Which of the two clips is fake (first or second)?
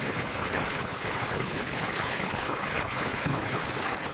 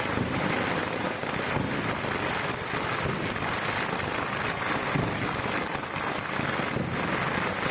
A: first